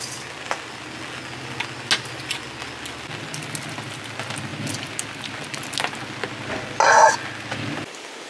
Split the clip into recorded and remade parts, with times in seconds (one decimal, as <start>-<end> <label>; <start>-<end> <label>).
0.0-8.3 recorded